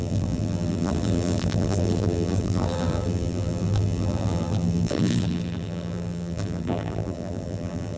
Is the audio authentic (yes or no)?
no